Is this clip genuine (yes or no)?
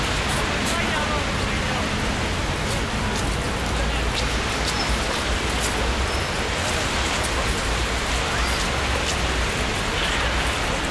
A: yes